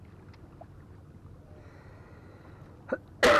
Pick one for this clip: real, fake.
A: real